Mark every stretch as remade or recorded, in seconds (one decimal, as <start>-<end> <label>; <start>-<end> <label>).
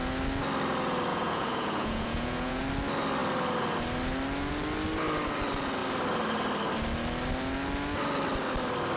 0.0-1.1 recorded; 1.1-2.6 remade; 2.6-9.0 recorded